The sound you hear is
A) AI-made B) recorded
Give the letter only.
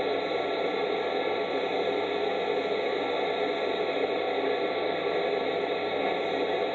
B